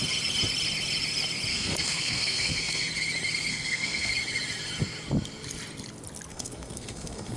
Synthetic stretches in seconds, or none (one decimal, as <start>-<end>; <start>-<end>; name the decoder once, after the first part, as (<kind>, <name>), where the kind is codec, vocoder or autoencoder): 1.5-2.9 (codec, SNAC); 3.5-4.1; 6.3-7.4